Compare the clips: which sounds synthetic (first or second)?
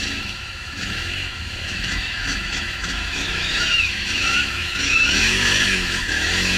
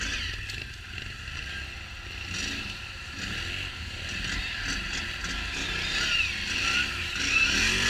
first